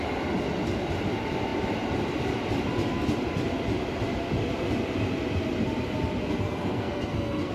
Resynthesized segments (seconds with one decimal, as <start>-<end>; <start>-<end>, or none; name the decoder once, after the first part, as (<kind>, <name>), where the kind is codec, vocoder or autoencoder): 6.2-7.5 (codec, SNAC)